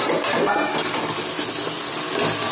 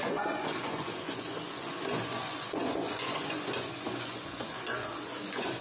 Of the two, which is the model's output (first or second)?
second